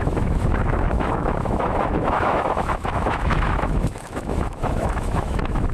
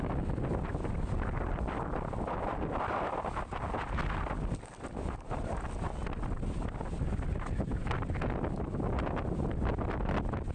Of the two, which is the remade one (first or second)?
first